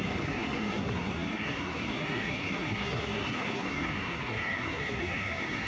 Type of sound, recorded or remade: remade